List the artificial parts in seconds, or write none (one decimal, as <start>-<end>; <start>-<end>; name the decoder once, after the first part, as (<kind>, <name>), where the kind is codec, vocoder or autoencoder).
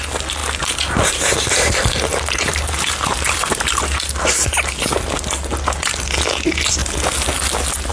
2.1-3.8 (vocoder, BigVGAN v2)